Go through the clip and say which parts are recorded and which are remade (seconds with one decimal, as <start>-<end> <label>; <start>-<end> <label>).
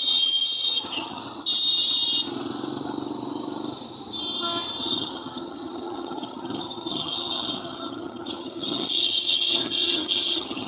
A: 0.0-1.2 remade; 1.2-4.8 recorded; 4.8-10.7 remade